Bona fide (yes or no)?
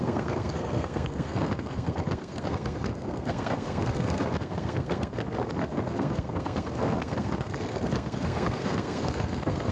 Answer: no